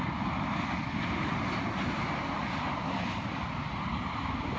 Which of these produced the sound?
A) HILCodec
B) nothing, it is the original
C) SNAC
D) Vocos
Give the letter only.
B